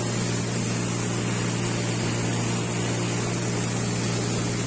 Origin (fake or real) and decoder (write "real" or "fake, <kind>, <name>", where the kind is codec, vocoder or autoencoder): real